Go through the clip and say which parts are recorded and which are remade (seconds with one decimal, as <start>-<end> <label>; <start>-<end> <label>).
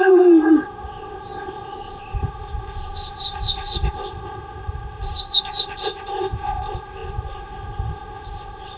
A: 0.0-8.8 remade